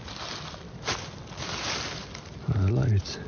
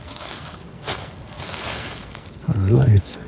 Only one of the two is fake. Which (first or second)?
second